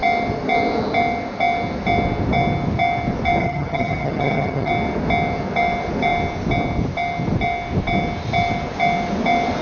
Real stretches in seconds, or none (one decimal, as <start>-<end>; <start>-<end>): 0.0-3.4; 4.7-9.6